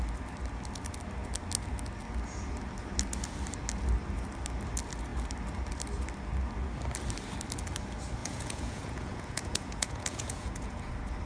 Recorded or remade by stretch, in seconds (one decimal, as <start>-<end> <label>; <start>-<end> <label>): 0.0-8.2 recorded; 8.2-10.9 remade; 10.9-11.3 recorded